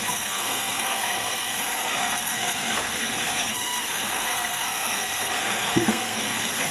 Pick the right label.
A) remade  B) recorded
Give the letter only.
A